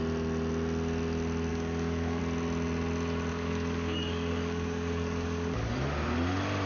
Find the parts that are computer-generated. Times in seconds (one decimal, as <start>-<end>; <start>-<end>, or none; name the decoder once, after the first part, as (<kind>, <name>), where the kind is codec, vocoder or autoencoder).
1.5-2.2 (codec, DAC); 3.3-5.7